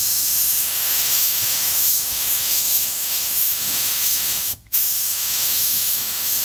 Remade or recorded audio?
remade